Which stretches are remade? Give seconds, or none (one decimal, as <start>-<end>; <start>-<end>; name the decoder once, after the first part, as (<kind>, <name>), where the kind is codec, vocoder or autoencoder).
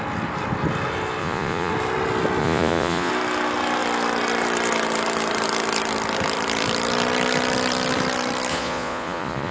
1.2-1.7 (vocoder, Vocos); 2.4-3.1; 8.5-9.5